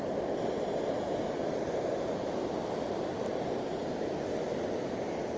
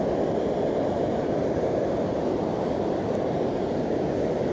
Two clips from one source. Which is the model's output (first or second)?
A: second